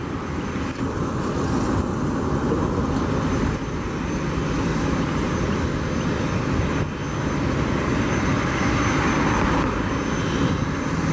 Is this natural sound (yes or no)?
yes